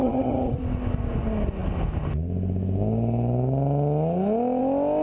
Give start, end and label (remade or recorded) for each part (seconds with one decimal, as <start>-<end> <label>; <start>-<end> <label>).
0.0-0.6 remade; 0.6-5.0 recorded